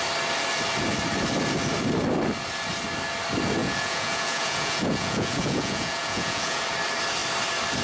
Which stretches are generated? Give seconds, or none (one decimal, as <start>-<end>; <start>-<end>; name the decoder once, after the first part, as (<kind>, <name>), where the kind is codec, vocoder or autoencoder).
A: 3.6-6.6 (vocoder, Vocos)